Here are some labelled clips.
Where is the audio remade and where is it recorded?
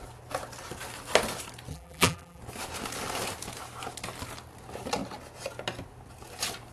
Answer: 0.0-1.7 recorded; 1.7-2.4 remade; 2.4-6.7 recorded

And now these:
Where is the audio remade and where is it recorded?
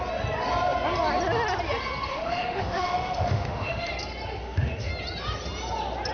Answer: 0.0-2.1 recorded; 2.1-3.9 remade; 3.9-4.4 recorded; 4.4-4.9 remade; 4.9-6.1 recorded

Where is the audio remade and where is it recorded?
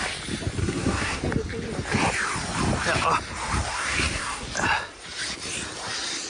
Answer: 0.0-0.6 recorded; 0.6-1.2 remade; 1.2-3.7 recorded; 3.7-4.5 remade; 4.5-6.3 recorded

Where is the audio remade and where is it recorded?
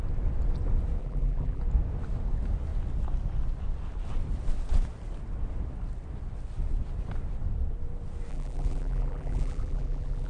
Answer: 0.0-1.0 recorded; 1.0-1.6 remade; 1.6-8.3 recorded; 8.3-10.3 remade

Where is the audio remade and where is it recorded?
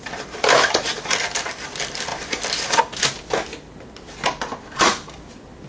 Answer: 0.0-5.7 remade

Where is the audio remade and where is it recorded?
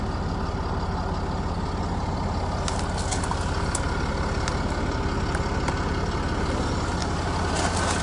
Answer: 0.0-8.0 recorded